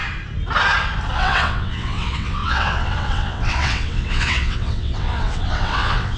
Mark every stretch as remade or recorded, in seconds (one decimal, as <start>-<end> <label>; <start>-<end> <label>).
0.0-1.1 recorded; 1.1-6.2 remade